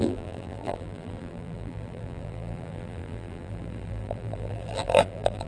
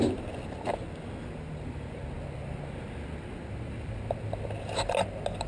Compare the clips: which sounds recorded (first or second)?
second